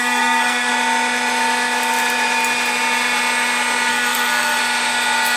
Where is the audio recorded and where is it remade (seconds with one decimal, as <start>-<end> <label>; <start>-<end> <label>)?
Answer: 0.0-0.7 remade; 0.7-3.9 recorded; 3.9-4.6 remade; 4.6-5.4 recorded